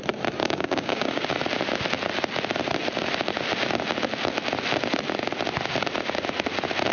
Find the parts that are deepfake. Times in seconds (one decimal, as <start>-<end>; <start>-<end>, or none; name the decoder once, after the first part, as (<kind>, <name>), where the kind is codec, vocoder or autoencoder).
0.4-1.3 (codec, DAC)